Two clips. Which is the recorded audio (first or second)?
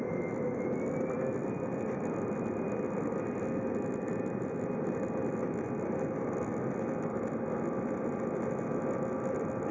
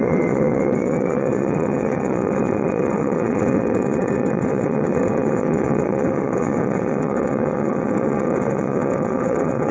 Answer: first